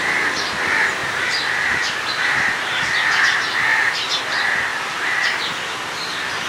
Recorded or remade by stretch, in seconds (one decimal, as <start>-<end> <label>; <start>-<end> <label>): 0.0-1.0 recorded; 1.0-2.8 remade; 2.8-3.7 recorded; 3.7-4.2 remade; 4.2-4.7 recorded; 4.7-5.2 remade; 5.2-6.5 recorded